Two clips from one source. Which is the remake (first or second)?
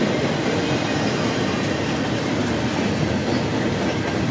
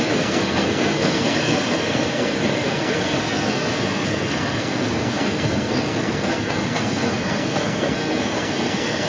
second